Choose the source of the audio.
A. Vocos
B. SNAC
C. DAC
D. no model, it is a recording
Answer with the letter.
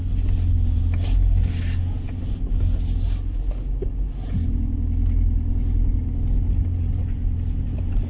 D